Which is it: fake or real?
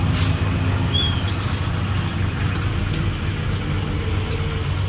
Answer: real